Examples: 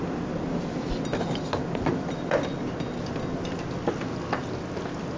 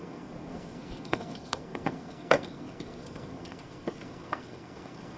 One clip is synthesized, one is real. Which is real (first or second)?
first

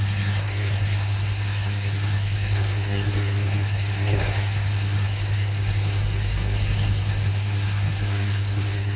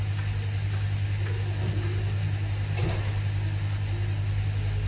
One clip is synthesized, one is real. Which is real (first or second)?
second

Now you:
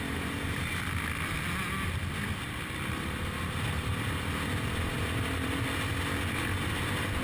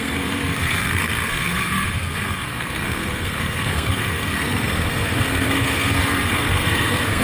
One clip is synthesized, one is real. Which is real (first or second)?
first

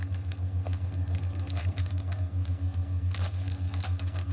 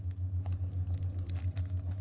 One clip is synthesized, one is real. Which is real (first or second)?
second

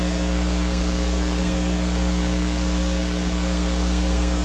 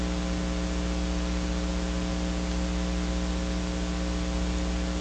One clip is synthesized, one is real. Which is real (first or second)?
second